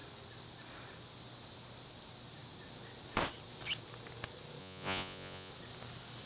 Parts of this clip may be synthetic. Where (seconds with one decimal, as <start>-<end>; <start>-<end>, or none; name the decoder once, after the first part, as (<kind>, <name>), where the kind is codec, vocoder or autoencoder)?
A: 4.6-5.5 (vocoder, Vocos)